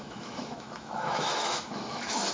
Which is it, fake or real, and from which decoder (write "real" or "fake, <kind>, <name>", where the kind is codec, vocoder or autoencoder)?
fake, autoencoder, DAC-VAE